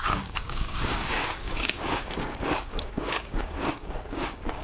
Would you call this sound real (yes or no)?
no